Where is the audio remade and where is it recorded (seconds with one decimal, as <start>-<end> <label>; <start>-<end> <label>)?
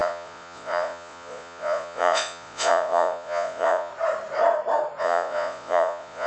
0.0-3.9 remade; 3.9-5.0 recorded; 5.0-6.3 remade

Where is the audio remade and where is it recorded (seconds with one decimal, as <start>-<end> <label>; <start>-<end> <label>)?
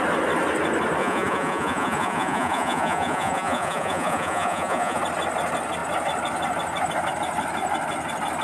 0.0-1.0 recorded; 1.0-5.0 remade; 5.0-8.4 recorded